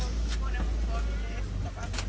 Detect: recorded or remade recorded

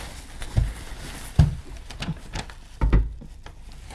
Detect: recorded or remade recorded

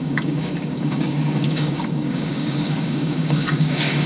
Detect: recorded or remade remade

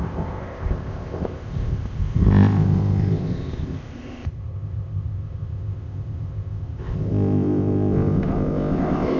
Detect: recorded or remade remade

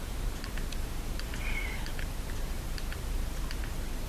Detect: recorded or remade remade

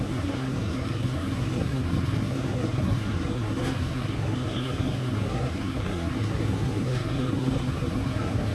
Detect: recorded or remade remade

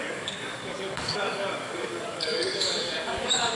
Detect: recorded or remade remade